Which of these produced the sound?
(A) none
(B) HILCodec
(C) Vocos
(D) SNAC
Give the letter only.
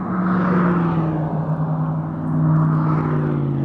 A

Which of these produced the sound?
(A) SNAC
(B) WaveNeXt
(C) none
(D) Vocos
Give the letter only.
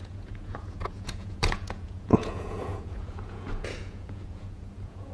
D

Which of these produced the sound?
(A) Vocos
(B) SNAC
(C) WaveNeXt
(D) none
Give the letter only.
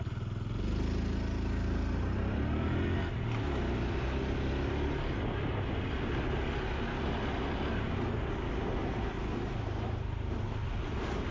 D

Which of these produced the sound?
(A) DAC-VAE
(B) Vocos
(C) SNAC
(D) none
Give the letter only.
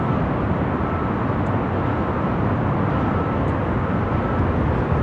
D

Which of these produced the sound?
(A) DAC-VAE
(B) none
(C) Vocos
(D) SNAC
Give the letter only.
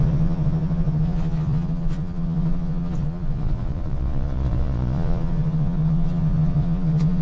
C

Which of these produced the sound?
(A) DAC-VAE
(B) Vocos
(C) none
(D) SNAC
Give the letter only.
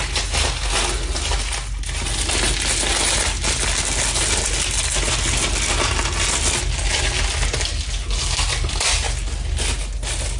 C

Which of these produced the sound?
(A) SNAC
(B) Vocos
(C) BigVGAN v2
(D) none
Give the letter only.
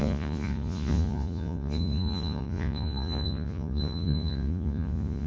B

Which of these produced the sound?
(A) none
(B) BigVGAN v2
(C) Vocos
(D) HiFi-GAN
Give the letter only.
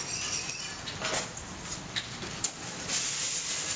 A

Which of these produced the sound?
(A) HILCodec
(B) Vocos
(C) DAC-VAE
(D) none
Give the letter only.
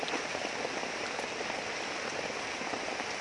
D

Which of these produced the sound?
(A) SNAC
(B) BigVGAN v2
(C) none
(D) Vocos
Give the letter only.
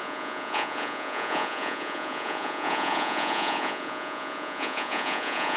D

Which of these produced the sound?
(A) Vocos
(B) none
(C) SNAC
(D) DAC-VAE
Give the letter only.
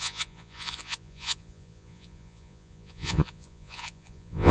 A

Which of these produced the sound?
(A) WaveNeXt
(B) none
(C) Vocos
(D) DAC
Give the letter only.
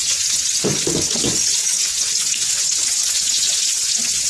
C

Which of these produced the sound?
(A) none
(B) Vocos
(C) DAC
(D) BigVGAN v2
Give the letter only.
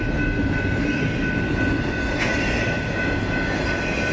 A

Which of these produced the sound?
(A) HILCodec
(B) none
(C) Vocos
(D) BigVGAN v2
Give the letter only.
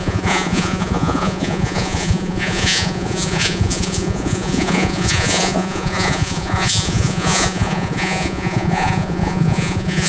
C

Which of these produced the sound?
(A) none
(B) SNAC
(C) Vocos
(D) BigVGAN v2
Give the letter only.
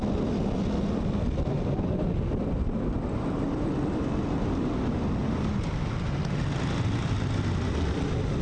A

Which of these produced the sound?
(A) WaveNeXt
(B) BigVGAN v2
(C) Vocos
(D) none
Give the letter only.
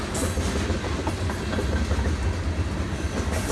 D